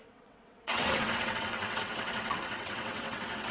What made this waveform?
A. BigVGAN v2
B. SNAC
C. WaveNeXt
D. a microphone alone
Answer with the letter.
C